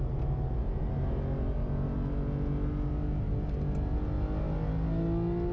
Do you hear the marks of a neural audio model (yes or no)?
no